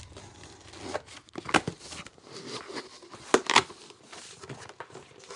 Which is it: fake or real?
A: real